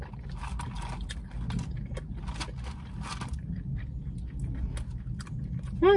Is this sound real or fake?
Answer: real